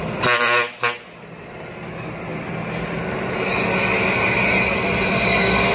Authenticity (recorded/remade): recorded